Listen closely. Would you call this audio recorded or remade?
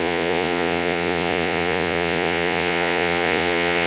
remade